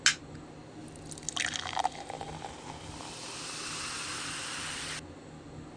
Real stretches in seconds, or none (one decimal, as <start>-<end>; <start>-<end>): 0.0-5.8